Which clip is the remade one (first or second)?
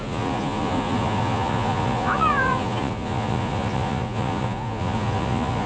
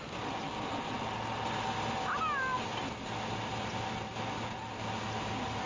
first